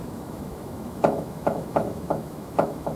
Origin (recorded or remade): remade